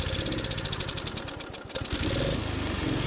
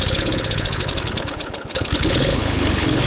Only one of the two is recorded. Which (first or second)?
first